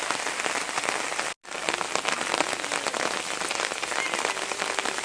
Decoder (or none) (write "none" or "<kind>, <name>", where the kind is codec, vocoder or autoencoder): none